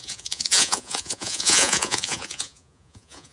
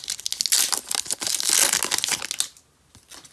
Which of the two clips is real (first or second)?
second